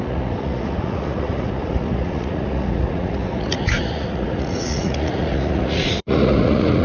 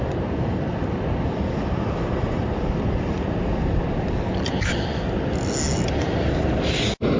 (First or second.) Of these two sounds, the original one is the second